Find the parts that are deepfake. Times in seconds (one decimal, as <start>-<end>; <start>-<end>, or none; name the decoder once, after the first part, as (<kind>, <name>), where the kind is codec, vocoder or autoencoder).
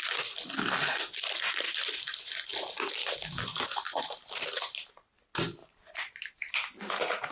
2.5-5.1 (vocoder, BigVGAN v2); 5.6-6.5